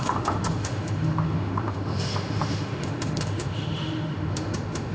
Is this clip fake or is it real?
fake